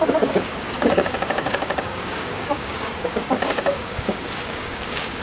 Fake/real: fake